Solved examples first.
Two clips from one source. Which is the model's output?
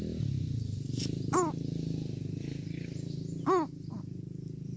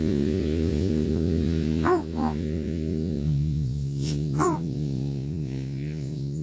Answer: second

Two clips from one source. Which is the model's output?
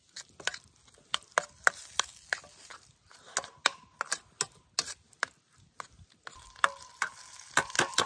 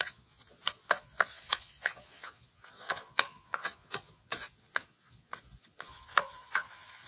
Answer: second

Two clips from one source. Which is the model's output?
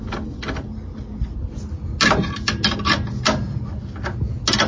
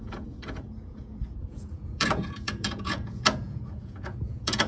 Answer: second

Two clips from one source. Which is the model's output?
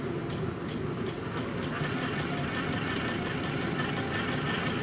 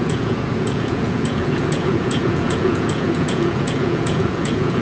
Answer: second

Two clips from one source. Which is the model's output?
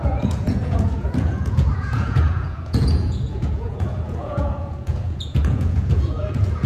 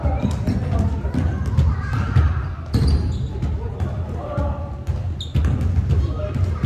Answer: first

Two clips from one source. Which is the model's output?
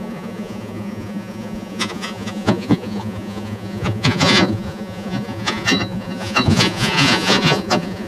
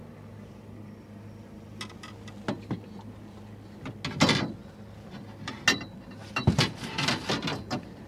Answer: first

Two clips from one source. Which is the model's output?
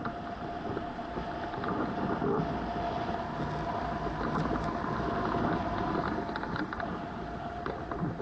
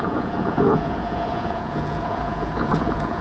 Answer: second